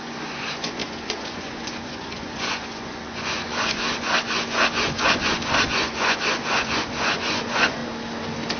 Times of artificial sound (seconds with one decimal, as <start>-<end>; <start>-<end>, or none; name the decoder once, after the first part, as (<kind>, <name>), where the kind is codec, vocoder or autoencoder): 0.0-7.8 (vocoder, Vocos)